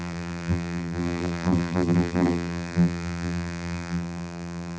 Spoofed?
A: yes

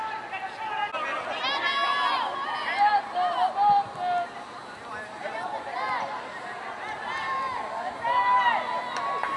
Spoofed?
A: no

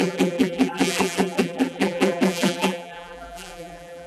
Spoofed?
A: yes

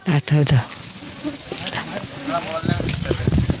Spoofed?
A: no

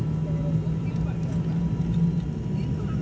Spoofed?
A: no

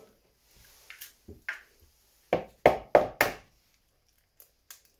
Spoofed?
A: no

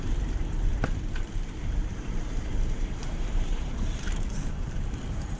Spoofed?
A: yes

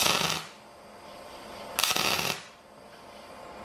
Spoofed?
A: no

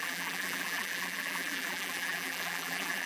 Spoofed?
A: yes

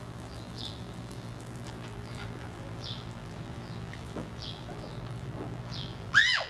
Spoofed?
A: yes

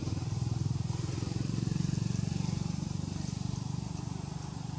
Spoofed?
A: yes